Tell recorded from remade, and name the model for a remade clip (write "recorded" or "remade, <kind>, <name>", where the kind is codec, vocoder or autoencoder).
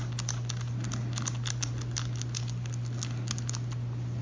recorded